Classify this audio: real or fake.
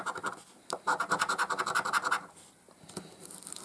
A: real